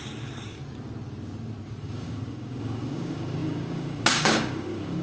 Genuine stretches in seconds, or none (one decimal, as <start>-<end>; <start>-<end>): 0.6-1.8